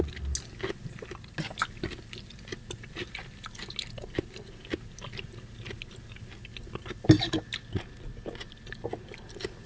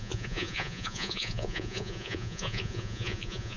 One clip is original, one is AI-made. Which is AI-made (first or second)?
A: second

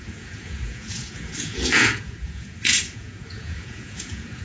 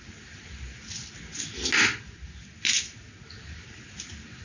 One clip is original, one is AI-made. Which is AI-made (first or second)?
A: first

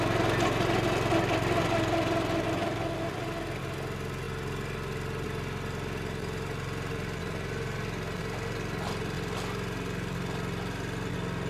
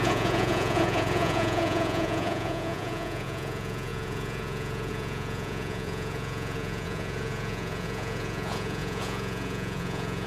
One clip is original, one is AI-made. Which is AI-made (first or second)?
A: second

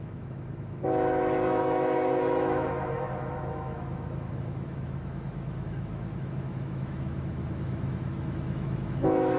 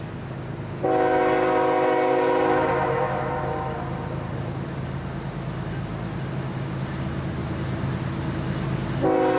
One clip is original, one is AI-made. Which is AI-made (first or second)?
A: first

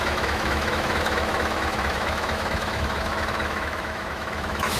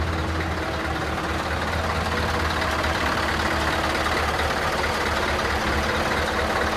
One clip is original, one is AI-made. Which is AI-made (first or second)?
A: first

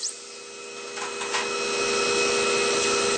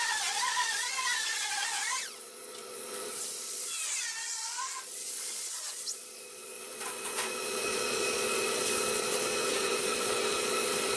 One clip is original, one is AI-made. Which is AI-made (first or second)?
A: second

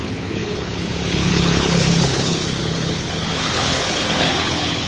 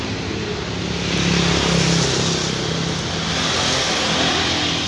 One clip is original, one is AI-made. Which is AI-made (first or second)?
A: first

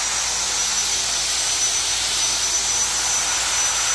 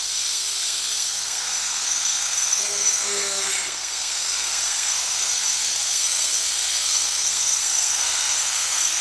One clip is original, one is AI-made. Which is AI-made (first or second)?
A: second